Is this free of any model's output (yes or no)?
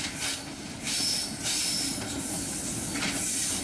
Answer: yes